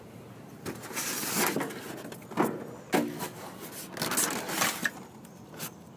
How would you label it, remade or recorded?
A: recorded